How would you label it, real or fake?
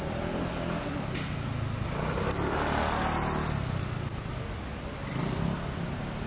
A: real